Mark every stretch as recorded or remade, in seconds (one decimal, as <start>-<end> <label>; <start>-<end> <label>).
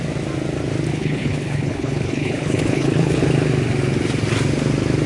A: 0.0-0.9 recorded; 0.9-3.2 remade; 3.2-5.1 recorded